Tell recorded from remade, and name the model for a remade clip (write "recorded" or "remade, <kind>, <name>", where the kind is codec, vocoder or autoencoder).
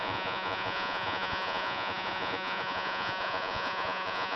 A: remade, vocoder, Vocos